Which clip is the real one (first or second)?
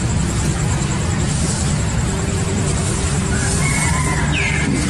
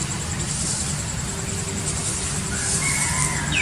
second